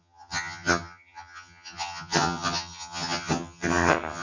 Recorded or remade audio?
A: remade